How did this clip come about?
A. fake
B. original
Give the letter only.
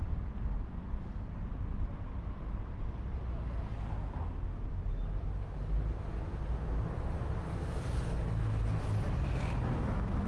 B